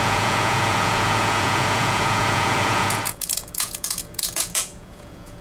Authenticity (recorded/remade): remade